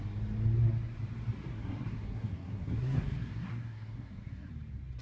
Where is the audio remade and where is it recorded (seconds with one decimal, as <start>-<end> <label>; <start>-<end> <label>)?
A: 0.0-1.5 recorded; 1.5-4.5 remade; 4.5-5.0 recorded